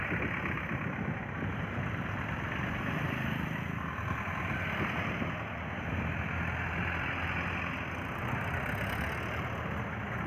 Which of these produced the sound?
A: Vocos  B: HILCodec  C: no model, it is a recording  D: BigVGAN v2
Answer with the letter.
C